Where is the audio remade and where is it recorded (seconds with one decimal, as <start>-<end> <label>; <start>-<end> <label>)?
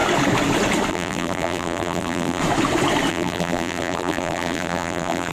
0.0-0.9 recorded; 0.9-2.4 remade; 2.4-3.1 recorded; 3.1-5.3 remade